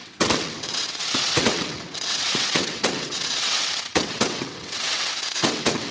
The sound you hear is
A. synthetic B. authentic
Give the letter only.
A